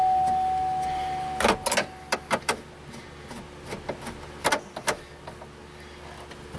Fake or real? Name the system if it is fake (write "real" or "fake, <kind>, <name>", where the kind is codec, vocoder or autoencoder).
real